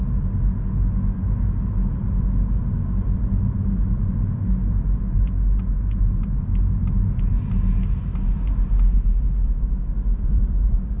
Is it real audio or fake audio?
real